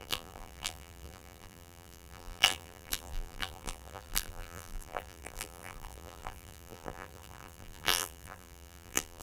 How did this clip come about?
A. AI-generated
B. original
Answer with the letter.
A